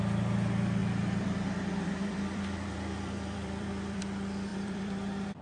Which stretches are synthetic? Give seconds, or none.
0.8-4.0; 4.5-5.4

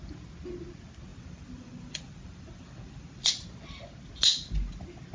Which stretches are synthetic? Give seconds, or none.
1.1-3.3

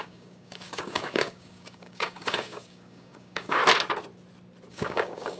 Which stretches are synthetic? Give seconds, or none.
0.0-3.6; 4.7-5.4

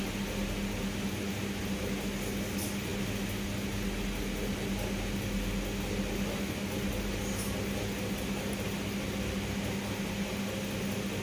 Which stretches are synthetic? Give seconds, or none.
none

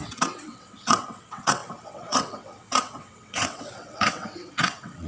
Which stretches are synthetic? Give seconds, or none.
0.0-5.1